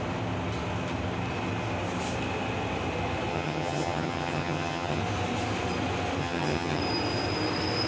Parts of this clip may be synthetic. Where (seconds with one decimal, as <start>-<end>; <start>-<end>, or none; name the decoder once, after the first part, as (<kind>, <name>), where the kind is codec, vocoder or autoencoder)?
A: 3.3-5.0 (vocoder, HiFi-GAN); 6.2-6.8